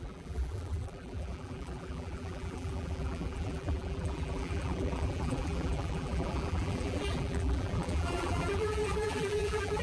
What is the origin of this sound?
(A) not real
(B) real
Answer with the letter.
A